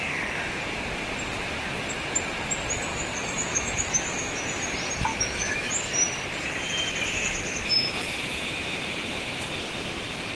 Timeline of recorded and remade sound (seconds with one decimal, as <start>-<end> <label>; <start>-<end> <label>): 0.0-2.9 recorded; 2.9-4.4 remade; 4.4-5.1 recorded; 5.1-5.7 remade; 5.7-7.8 recorded; 7.8-9.5 remade; 9.5-10.4 recorded